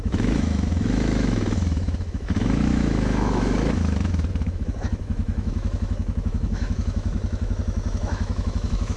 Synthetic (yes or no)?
yes